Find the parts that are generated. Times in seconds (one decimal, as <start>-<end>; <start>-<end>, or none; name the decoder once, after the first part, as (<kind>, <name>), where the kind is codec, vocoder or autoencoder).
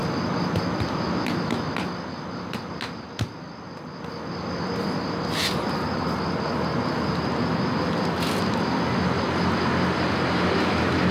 none